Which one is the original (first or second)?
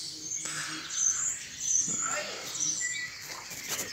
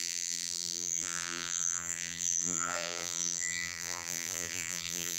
first